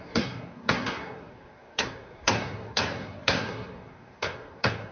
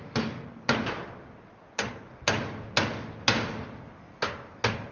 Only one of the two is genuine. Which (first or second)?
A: second